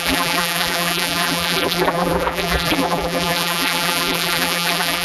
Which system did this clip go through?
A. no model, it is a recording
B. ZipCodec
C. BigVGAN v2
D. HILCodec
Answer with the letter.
C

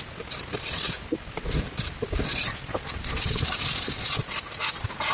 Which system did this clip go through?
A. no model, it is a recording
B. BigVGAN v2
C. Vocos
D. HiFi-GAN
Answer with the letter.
A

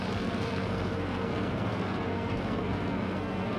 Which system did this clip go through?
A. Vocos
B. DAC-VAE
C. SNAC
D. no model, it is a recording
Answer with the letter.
C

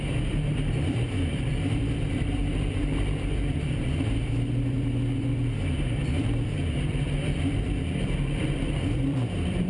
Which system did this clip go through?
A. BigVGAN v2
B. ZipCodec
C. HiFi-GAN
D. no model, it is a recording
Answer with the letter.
A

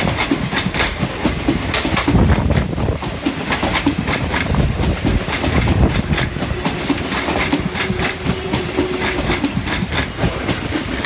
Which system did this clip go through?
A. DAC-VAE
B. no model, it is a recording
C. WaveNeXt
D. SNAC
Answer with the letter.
B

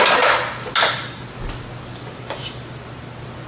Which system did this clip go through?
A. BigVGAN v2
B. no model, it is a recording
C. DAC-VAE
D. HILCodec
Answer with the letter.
B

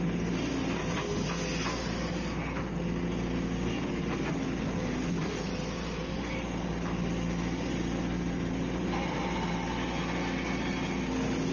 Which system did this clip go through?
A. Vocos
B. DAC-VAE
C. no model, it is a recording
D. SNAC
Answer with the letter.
C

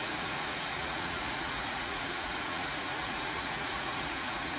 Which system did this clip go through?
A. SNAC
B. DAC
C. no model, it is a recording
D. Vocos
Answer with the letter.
D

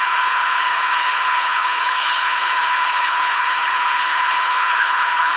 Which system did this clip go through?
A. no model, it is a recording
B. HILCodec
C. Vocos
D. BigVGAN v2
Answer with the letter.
B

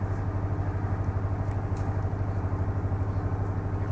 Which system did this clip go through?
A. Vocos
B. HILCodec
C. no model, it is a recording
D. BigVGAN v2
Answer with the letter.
C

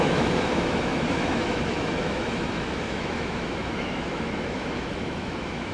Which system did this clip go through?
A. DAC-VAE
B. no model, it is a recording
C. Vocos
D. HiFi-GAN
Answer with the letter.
A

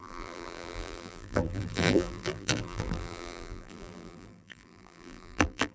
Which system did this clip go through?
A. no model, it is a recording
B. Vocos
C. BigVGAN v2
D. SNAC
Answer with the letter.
C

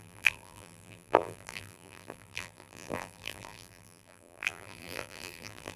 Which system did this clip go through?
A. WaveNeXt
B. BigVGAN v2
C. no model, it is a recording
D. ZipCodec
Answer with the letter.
B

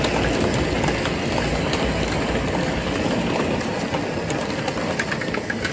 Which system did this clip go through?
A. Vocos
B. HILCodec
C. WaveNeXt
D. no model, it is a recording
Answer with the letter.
D